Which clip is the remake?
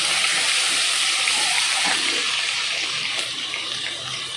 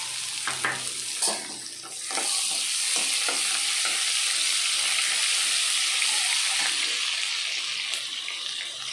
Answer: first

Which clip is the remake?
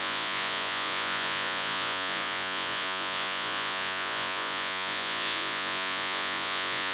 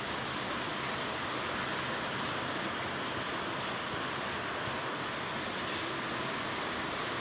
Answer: first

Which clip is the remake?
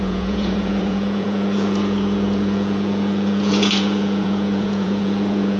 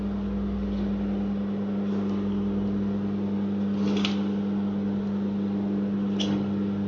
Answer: first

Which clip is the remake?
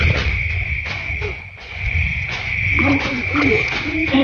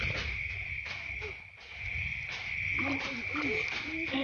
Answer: first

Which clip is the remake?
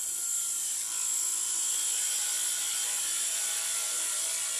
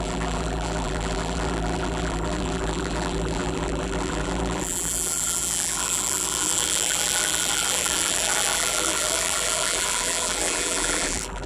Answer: second